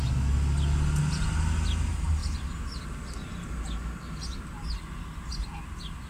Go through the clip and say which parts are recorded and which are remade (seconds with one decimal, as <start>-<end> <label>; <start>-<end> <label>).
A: 0.0-6.1 recorded